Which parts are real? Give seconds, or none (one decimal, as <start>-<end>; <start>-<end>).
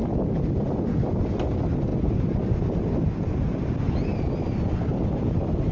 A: 0.0-5.7